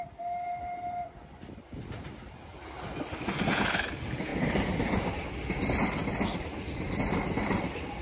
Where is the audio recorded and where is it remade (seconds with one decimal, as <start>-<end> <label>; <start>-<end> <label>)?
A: 0.0-8.0 recorded